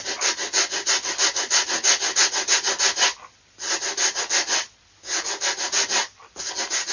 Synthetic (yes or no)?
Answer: no